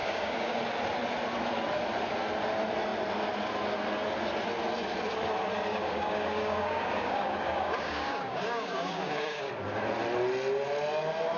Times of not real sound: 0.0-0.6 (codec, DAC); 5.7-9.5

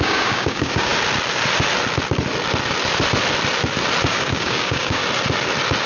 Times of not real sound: 0.0-0.9 (codec, DAC); 4.1-5.0

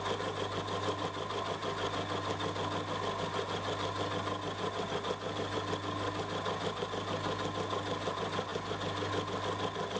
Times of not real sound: none

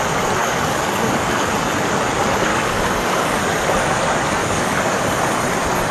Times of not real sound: 0.4-1.5 (codec, DAC); 2.5-3.4; 4.4-5.0

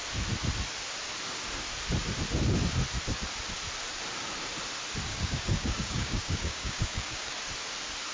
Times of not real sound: 5.1-7.3 (codec, DAC)

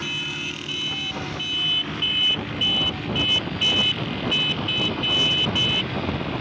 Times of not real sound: none

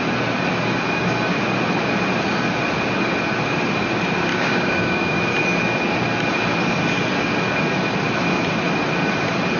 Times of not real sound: 4.3-5.2 (codec, DAC)